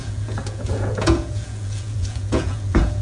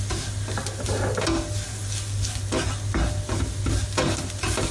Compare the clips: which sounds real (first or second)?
second